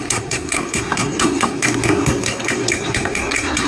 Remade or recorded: remade